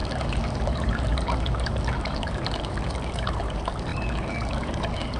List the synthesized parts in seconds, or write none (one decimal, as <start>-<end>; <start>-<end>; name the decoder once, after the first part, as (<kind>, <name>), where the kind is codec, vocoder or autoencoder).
0.0-5.2 (codec, DAC)